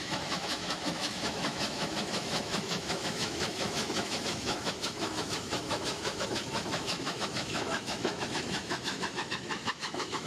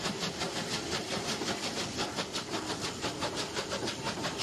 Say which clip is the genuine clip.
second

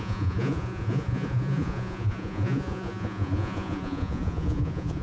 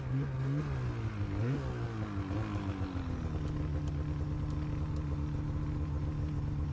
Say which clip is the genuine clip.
second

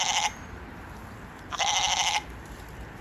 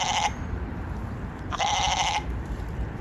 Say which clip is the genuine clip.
first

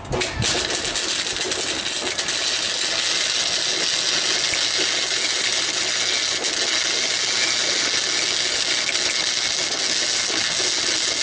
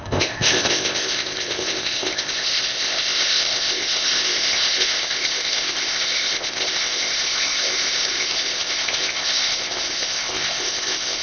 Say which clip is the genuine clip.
first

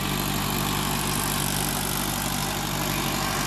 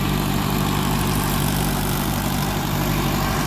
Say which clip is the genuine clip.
first